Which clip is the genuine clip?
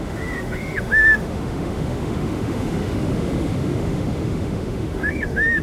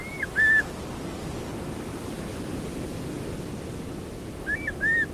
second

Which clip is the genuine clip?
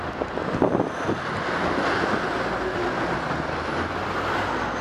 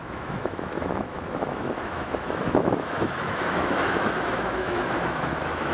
first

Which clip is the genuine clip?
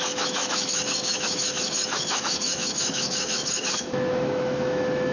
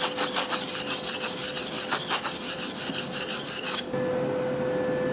second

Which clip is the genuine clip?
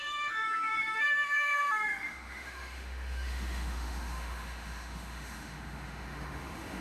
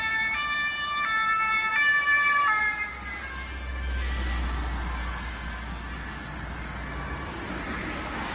second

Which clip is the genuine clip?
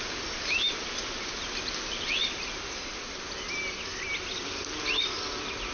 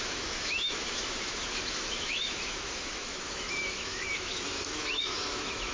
first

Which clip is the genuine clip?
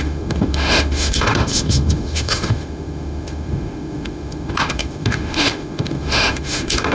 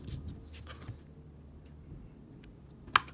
second